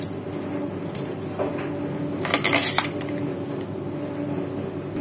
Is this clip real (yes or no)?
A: yes